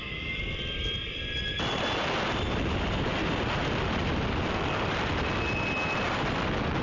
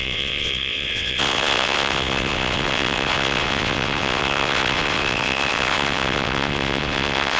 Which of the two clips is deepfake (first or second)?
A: second